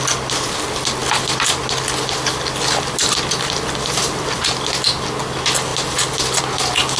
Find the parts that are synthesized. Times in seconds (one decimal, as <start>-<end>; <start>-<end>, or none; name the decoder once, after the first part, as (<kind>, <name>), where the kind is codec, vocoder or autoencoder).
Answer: none